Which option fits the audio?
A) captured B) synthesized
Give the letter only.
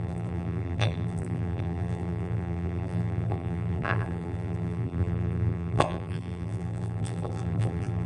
B